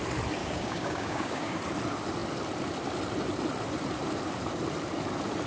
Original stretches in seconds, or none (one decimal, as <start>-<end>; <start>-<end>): 0.0-0.4; 1.6-5.5